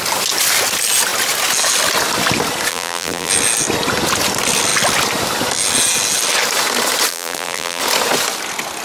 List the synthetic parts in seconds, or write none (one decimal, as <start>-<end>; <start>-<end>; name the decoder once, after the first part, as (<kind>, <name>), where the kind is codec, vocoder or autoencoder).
2.7-3.3 (vocoder, BigVGAN v2); 7.1-7.8